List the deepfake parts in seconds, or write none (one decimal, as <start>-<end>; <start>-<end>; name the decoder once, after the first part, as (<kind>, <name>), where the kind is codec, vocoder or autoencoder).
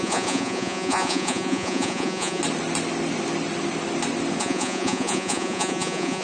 0.0-2.4 (vocoder, Vocos); 4.4-6.2